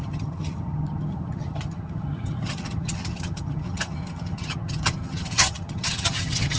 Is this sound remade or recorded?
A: remade